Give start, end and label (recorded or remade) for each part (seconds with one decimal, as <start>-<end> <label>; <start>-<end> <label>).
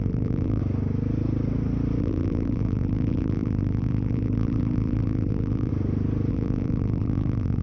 0.0-0.6 remade; 0.6-2.0 recorded; 2.0-5.7 remade; 5.7-6.3 recorded; 6.3-7.6 remade